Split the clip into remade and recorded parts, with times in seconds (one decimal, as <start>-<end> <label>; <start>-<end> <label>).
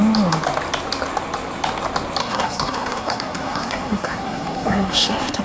0.0-2.2 recorded; 2.2-5.4 remade